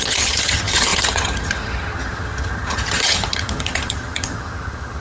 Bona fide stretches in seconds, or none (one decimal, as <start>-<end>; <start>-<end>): none